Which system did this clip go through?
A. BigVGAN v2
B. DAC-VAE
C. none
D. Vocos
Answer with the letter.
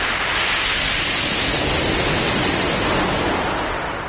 A